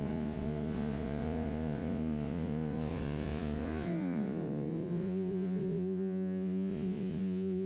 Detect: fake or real fake